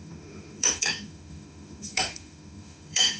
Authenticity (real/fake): fake